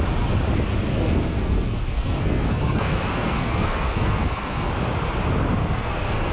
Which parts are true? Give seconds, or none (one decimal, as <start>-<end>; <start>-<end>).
0.0-0.9; 4.7-5.6